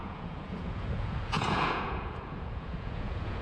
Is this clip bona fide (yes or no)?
no